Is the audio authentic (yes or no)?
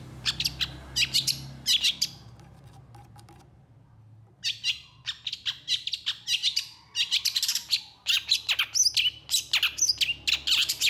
yes